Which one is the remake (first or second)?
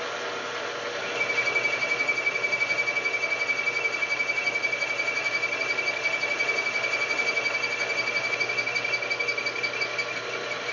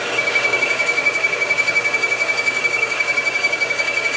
second